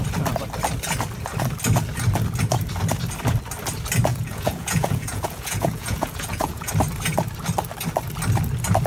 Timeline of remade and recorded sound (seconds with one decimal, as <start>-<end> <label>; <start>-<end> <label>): 0.0-4.1 recorded; 4.1-6.7 remade; 6.7-8.9 recorded